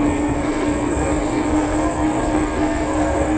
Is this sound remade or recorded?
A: remade